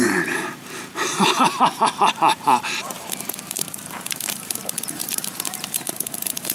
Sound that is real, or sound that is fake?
fake